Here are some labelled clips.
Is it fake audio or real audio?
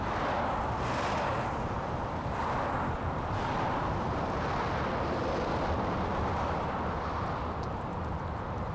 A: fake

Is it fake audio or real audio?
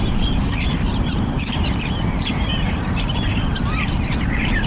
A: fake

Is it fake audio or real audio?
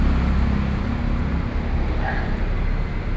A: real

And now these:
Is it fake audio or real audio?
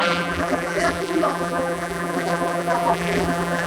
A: fake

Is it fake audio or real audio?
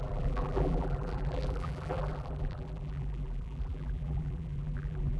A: fake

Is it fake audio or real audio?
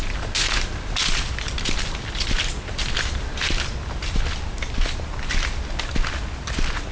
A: real